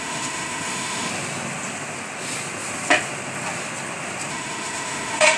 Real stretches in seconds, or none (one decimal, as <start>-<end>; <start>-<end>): 1.1-4.3